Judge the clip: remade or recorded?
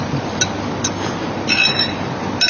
recorded